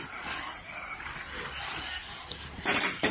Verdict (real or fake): real